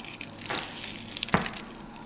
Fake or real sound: real